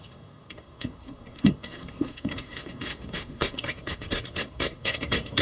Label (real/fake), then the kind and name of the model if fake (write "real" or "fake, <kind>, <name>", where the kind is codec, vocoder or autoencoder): fake, codec, SNAC